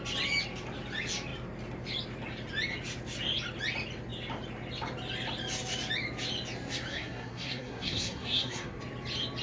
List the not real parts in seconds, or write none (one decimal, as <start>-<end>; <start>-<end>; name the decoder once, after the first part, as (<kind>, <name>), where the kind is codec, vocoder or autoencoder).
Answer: 6.9-8.8 (codec, SNAC)

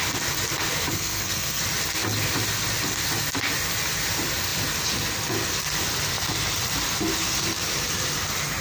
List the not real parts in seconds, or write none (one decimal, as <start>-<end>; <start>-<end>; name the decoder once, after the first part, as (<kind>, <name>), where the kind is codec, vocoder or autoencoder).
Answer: 0.9-1.6 (codec, SNAC)

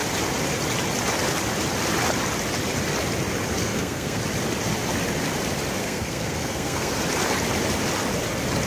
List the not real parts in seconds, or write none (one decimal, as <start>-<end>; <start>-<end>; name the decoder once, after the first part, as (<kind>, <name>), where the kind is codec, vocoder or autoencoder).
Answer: 3.6-4.2 (codec, SNAC); 5.8-6.9

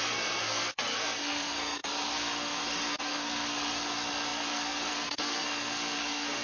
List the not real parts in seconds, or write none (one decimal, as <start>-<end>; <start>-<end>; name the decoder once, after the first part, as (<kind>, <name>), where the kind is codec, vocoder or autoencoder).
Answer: 0.0-6.4 (codec, SNAC)

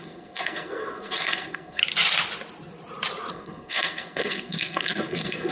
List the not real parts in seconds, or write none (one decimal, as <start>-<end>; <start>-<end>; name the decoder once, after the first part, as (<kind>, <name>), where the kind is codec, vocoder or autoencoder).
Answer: 0.0-1.8 (codec, SNAC); 3.3-5.5

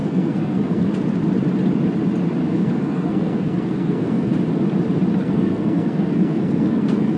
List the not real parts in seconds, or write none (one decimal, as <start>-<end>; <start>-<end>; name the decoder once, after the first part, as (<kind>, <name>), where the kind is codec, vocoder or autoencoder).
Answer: 0.0-0.9 (codec, SNAC); 2.4-4.3; 5.2-7.2

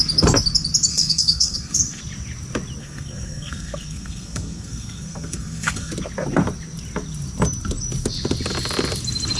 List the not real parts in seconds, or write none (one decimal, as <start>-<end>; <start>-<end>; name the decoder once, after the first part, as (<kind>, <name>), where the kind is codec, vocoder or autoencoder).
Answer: 0.9-2.0 (codec, SNAC); 2.8-5.9